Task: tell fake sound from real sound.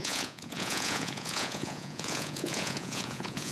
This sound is fake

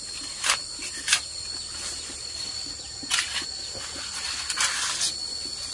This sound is real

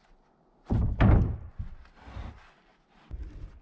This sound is real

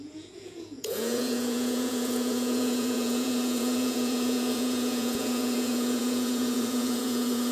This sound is fake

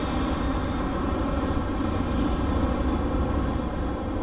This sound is real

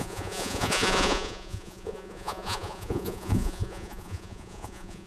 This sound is fake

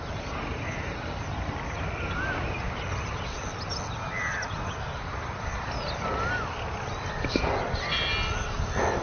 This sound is real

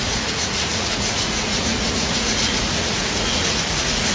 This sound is fake